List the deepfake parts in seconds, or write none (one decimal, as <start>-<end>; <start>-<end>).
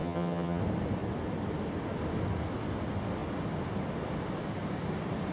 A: 0.0-0.6